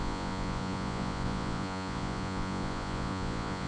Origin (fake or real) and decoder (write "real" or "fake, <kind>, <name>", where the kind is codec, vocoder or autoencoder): fake, vocoder, Vocos